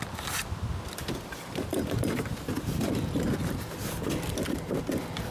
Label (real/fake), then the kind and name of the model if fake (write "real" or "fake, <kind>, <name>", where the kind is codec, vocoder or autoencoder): real